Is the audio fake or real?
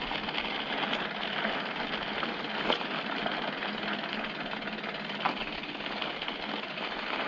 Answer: real